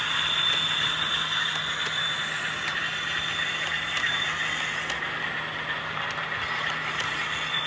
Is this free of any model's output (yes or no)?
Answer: yes